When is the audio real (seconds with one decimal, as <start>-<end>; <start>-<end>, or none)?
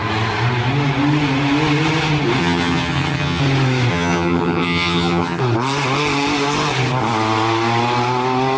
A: 0.0-2.4; 3.4-3.9; 5.4-8.6